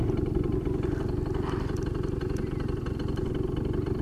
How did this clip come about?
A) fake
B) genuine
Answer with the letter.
B